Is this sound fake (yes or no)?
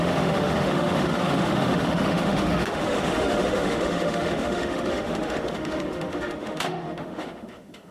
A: yes